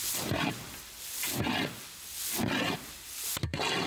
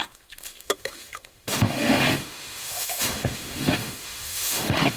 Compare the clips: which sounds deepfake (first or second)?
second